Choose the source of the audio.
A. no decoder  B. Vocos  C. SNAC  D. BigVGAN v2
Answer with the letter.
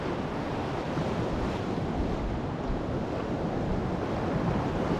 A